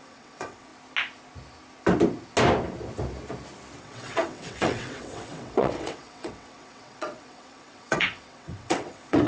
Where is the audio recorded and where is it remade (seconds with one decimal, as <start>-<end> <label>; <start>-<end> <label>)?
0.0-0.7 remade; 0.7-3.8 recorded; 3.8-9.3 remade